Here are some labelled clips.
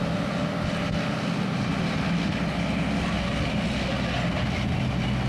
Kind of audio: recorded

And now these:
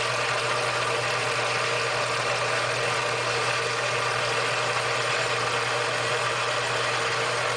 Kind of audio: recorded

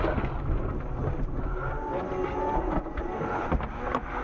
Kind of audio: recorded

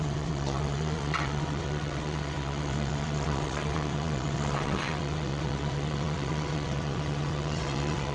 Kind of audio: remade